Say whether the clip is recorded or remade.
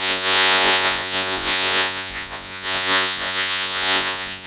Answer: remade